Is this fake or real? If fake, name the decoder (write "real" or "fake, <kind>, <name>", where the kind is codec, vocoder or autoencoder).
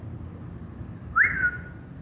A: real